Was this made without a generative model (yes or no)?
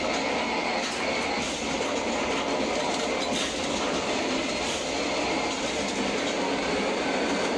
yes